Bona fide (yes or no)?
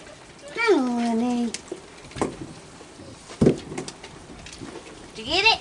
yes